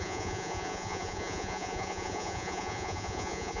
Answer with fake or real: fake